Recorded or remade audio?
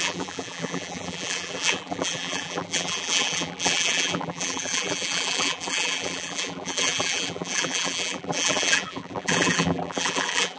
remade